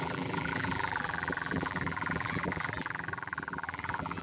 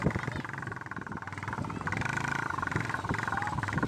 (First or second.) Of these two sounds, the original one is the second